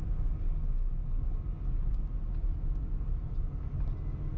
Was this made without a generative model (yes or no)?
yes